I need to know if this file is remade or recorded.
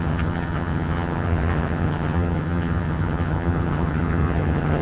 remade